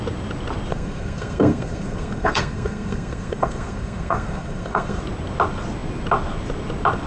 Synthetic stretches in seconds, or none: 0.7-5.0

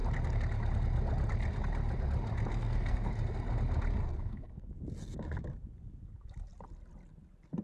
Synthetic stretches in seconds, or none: 2.5-3.1; 4.1-4.7

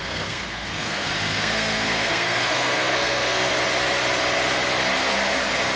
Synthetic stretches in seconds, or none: 0.0-3.5